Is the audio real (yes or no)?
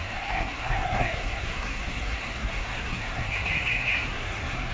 no